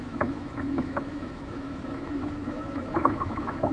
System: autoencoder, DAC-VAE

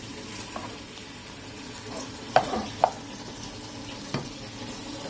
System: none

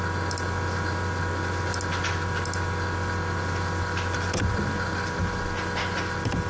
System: none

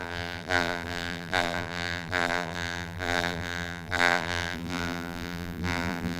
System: vocoder, BigVGAN v2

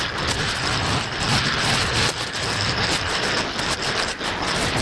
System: none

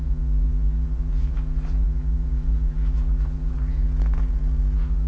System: vocoder, Vocos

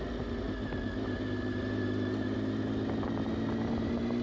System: none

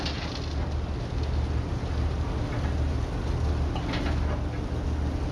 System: none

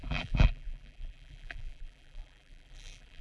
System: vocoder, BigVGAN v2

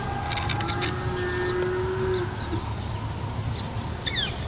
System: none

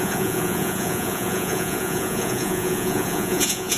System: vocoder, Vocos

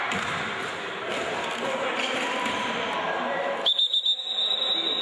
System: none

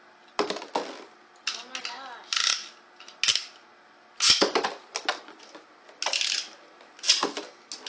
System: none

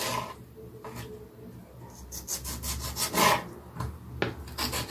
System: none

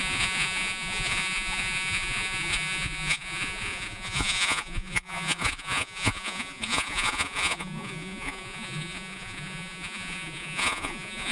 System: vocoder, Vocos